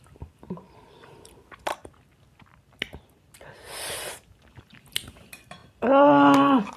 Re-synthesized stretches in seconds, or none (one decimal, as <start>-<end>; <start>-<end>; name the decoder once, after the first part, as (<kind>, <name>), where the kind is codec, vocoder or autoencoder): 0.0-1.7 (vocoder, BigVGAN v2); 3.4-6.8